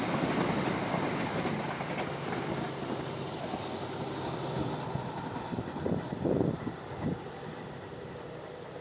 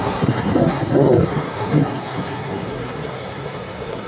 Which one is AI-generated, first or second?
second